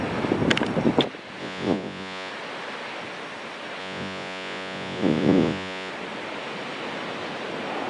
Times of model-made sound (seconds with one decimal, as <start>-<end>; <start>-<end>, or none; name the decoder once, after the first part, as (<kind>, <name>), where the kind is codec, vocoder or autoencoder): 1.4-2.3 (vocoder, Vocos); 3.8-5.9